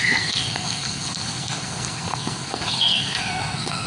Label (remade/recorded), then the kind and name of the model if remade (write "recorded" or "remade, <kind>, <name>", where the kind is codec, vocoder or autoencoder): remade, codec, SNAC